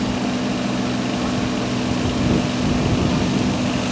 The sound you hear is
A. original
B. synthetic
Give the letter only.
A